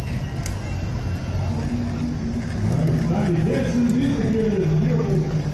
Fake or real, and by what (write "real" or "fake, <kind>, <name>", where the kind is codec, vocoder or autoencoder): real